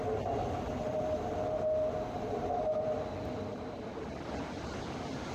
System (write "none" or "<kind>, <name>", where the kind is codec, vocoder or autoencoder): none